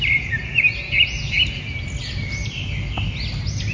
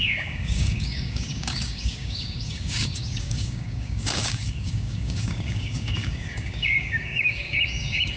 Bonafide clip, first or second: first